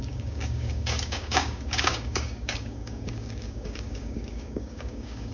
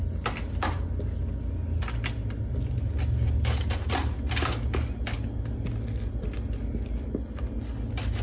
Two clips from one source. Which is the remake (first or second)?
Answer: first